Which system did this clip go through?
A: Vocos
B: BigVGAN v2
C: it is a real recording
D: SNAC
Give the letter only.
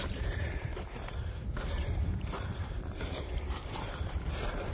B